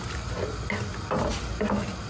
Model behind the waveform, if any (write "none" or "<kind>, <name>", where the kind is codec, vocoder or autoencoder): none